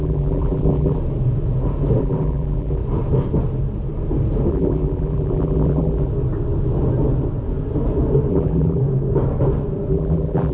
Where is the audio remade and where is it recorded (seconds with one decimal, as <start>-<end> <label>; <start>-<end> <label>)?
0.0-1.0 remade; 1.0-2.0 recorded; 2.0-2.8 remade; 2.8-4.5 recorded; 4.5-6.1 remade; 6.1-8.3 recorded; 8.3-8.8 remade; 8.8-9.9 recorded; 9.9-10.5 remade